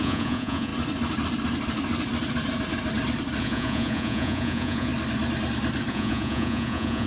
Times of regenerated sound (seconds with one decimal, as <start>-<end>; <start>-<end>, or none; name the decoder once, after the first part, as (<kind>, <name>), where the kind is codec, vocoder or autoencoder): 0.0-0.7 (vocoder, Vocos); 3.4-4.9; 5.9-7.1